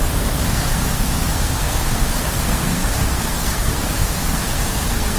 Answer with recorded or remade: remade